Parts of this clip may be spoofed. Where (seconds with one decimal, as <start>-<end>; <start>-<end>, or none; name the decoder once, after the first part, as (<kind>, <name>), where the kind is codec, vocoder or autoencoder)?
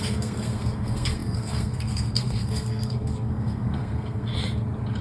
0.0-4.3 (codec, SNAC)